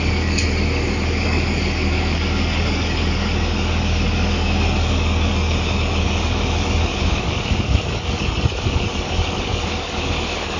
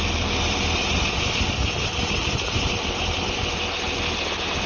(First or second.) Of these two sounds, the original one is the second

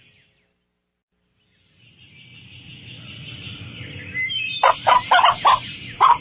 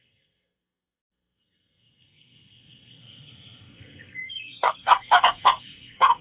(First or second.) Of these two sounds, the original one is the first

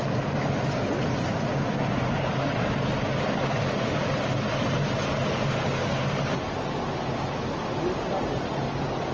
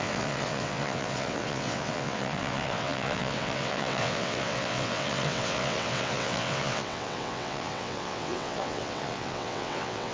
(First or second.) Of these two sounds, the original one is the first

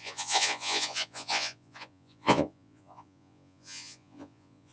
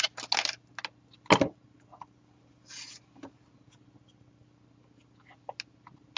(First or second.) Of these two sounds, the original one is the second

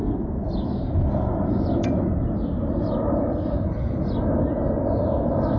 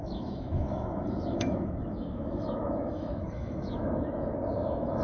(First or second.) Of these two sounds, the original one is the first